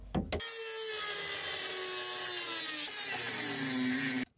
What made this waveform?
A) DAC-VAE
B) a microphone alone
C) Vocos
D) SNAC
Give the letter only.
B